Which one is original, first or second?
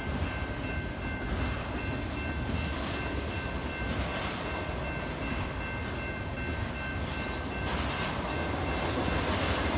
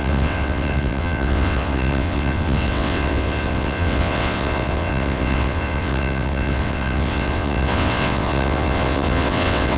first